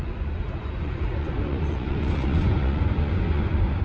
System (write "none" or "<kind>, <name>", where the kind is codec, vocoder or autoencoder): vocoder, Vocos